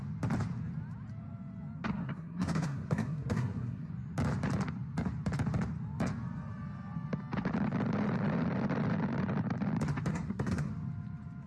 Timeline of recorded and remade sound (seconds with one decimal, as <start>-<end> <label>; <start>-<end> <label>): 0.0-2.0 recorded; 2.0-3.9 remade; 3.9-10.1 recorded; 10.1-10.7 remade; 10.7-11.5 recorded